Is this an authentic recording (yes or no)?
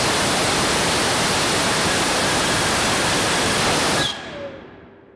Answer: yes